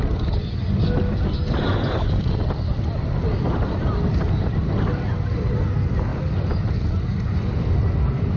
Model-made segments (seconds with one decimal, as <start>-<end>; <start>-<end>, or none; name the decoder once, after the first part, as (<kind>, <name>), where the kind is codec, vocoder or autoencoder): none

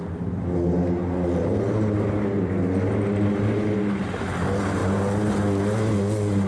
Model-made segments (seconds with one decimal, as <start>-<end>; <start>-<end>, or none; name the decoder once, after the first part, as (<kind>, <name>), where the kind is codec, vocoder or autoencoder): none